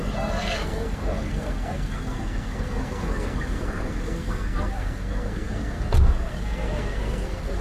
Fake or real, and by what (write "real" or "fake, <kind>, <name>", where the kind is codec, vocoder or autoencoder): fake, codec, SNAC